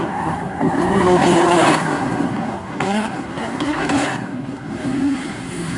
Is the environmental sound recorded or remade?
remade